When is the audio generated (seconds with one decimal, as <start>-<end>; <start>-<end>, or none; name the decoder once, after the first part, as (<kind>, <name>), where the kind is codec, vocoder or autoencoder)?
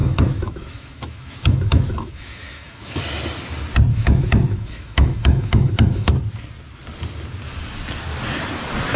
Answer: 0.0-3.0 (autoencoder, DAC-VAE); 3.9-6.1